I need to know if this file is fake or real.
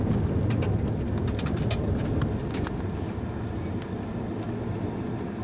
real